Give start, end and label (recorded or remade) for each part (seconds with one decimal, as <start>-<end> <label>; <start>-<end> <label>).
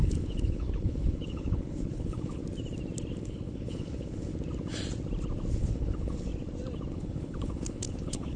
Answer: 0.0-2.4 remade; 2.4-3.2 recorded; 3.2-4.3 remade; 4.3-5.5 recorded; 5.5-6.3 remade; 6.3-6.9 recorded; 6.9-8.4 remade